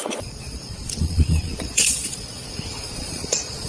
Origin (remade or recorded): remade